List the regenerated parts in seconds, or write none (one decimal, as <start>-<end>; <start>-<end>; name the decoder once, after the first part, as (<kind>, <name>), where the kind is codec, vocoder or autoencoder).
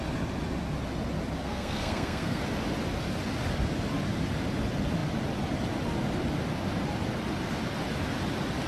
1.4-2.4 (codec, SNAC)